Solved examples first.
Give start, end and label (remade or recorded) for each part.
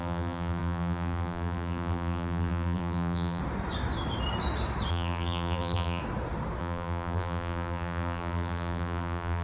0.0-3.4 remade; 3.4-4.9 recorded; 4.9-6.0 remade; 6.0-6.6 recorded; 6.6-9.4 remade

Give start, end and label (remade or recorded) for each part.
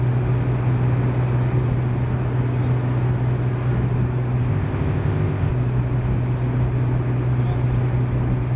0.0-4.5 recorded; 4.5-5.5 remade; 5.5-8.6 recorded